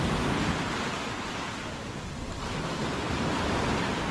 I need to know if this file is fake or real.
real